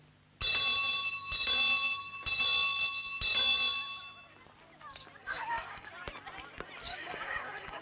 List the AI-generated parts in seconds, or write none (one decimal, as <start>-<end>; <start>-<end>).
5.2-5.9; 6.9-7.8